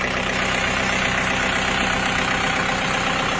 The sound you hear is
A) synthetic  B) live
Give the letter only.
B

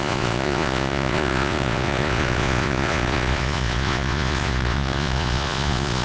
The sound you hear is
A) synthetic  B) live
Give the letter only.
A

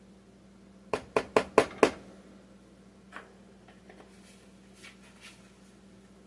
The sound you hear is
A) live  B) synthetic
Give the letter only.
A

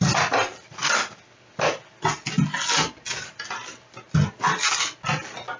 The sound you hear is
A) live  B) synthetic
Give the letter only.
A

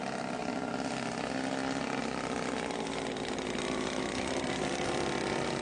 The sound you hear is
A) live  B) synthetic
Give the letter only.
A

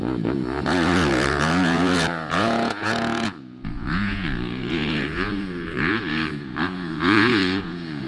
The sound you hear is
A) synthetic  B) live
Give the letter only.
A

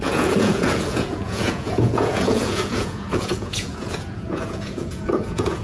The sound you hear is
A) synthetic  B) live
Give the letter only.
A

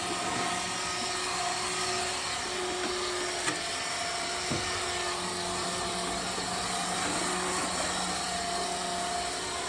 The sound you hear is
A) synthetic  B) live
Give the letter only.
B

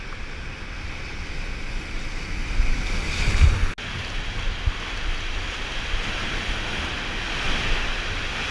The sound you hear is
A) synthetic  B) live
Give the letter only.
B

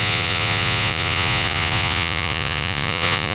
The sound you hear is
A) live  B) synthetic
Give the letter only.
B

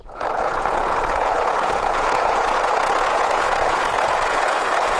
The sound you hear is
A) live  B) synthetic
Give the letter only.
B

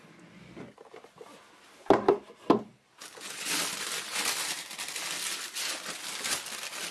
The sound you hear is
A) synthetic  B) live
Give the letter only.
B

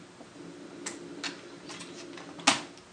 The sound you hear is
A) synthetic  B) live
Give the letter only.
B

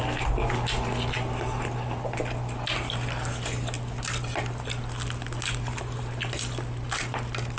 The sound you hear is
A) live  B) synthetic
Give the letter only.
A